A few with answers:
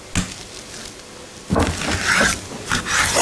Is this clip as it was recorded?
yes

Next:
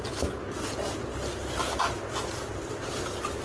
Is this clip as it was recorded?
yes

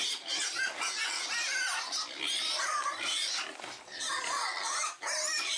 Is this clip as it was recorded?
yes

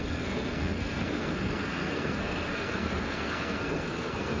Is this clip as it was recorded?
no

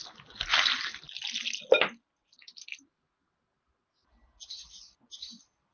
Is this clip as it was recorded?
yes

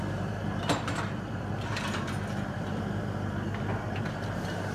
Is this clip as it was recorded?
yes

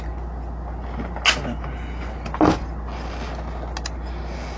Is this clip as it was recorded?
yes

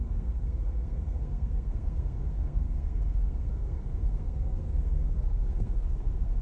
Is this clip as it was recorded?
no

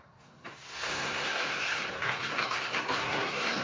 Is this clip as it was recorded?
no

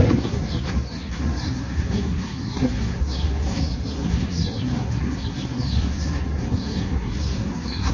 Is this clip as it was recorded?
no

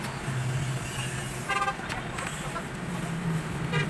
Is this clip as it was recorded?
yes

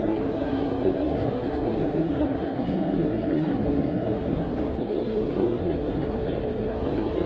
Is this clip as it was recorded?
no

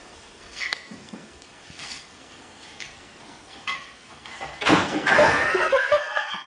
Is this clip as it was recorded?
no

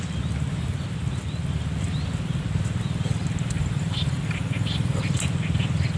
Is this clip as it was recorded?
yes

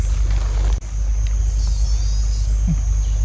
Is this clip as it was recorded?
yes